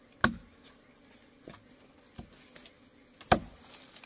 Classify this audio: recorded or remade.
recorded